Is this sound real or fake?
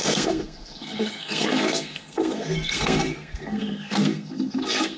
fake